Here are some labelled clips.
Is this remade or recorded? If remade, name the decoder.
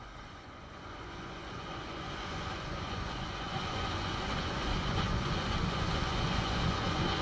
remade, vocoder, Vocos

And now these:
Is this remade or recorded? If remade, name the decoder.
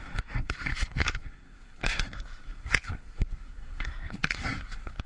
remade, codec, SNAC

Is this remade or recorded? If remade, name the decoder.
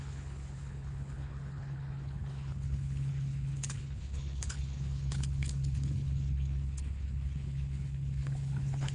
remade, codec, HILCodec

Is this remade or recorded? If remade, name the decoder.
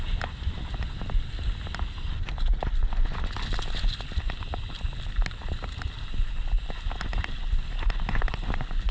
recorded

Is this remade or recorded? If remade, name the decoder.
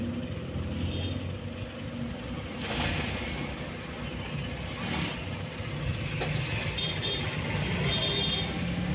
recorded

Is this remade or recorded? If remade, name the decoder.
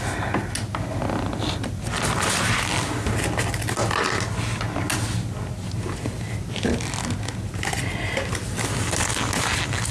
recorded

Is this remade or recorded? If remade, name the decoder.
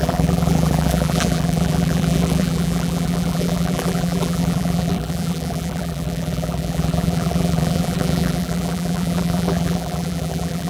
remade, vocoder, BigVGAN v2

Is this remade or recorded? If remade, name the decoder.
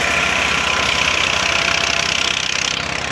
recorded